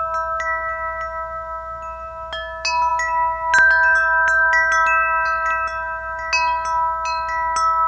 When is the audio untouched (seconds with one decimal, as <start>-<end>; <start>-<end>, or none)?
0.0-7.9